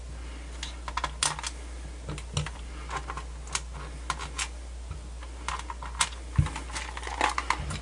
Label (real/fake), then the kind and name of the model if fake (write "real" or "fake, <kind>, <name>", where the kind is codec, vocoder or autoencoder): real